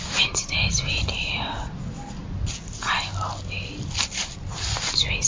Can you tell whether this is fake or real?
real